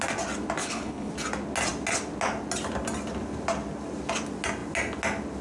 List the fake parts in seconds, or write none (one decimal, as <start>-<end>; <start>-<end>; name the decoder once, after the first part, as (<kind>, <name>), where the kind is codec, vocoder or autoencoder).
0.6-1.1 (codec, HILCodec)